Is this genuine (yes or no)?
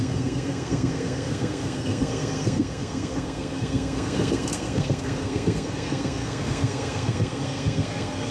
no